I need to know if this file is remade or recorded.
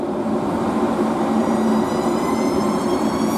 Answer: remade